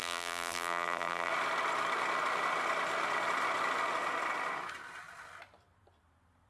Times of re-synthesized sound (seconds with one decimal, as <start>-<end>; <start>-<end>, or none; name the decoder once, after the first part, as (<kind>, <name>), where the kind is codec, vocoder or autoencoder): 0.0-1.3 (vocoder, BigVGAN v2)